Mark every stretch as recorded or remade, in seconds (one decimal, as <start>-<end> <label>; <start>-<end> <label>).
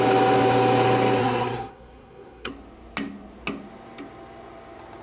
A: 0.0-1.2 recorded; 1.2-2.5 remade; 2.5-5.0 recorded